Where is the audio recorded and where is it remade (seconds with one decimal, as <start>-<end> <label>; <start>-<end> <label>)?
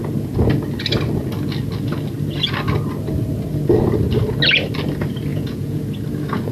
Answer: 0.0-5.3 recorded; 5.3-5.8 remade; 5.8-6.5 recorded